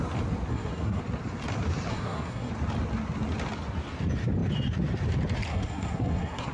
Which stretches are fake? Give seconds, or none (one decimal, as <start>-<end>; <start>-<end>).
0.5-1.0; 1.9-2.5; 5.5-6.5